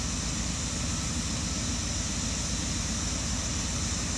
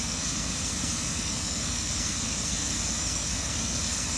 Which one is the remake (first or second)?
second